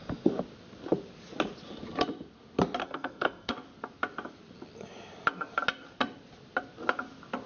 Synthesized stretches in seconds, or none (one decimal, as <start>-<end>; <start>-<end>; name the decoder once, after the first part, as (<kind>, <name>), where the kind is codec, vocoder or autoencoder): 2.8-3.5 (codec, SNAC)